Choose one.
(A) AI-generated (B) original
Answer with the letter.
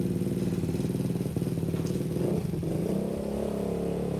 B